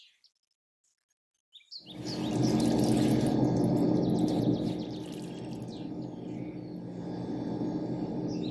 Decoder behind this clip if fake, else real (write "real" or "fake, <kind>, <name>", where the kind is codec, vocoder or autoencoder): real